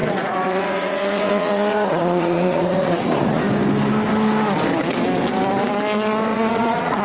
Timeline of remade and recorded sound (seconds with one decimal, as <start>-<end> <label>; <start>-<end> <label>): 0.0-3.4 remade; 3.4-6.3 recorded; 6.3-7.0 remade